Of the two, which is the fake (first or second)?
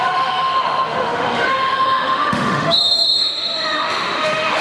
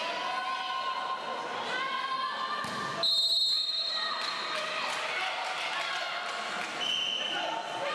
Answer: first